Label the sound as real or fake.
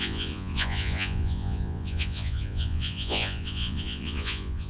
fake